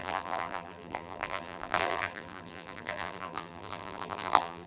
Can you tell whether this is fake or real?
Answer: fake